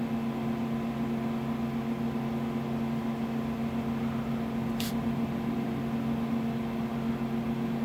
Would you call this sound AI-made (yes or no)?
no